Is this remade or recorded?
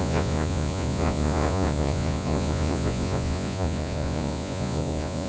remade